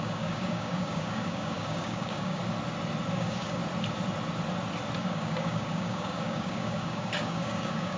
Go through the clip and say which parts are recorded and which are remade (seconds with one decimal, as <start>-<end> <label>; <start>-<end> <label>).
0.0-2.4 remade; 2.4-3.1 recorded; 3.1-3.6 remade; 3.6-5.0 recorded; 5.0-8.0 remade